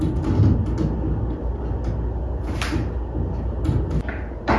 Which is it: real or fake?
real